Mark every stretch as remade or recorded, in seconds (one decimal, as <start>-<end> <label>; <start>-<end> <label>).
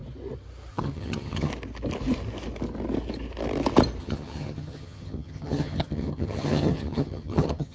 0.0-0.7 recorded; 0.7-1.5 remade; 1.5-4.0 recorded; 4.0-7.7 remade